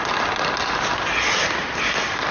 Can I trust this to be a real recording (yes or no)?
yes